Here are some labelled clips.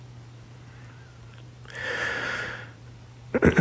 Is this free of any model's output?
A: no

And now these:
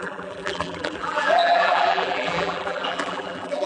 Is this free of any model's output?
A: no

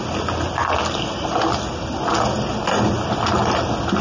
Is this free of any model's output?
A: no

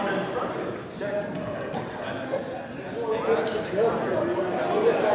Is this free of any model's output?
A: yes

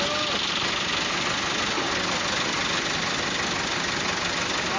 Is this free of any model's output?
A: yes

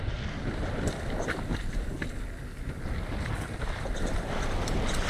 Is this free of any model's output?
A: yes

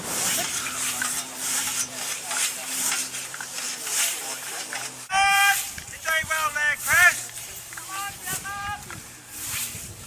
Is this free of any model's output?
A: no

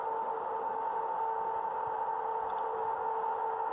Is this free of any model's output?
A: yes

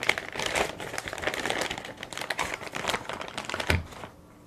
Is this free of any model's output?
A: yes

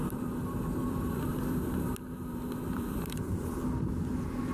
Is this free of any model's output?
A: no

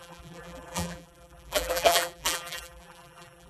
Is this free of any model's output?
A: no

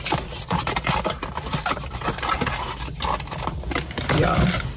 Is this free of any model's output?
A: yes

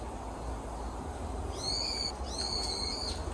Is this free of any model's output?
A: yes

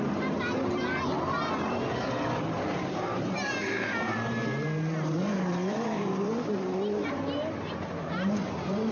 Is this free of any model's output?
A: no